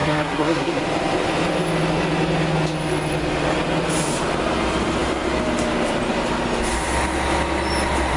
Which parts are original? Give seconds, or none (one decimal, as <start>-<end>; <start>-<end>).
0.8-8.2